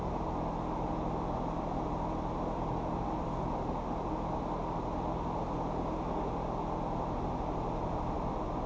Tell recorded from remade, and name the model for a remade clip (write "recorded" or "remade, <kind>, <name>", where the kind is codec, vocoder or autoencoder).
recorded